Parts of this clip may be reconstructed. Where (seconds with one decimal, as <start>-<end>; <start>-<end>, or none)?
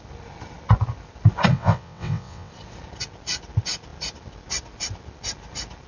1.5-2.5